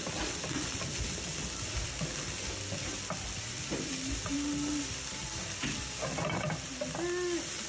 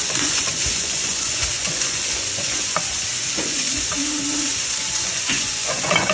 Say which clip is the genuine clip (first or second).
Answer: first